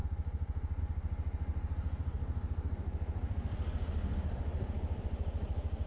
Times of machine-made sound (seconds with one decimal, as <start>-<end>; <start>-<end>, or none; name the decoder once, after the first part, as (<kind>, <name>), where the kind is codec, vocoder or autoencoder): 0.0-0.8 (vocoder, BigVGAN v2); 1.5-5.0